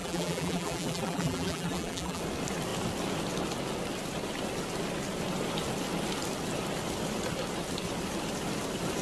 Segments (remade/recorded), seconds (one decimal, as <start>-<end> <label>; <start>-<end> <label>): 0.0-2.2 remade; 2.2-9.0 recorded